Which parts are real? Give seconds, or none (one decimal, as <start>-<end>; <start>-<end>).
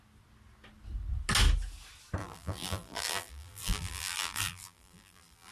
0.0-2.2